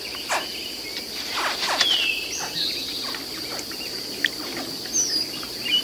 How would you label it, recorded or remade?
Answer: recorded